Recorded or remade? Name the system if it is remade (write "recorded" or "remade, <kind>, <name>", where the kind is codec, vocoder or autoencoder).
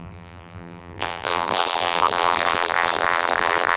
remade, vocoder, BigVGAN v2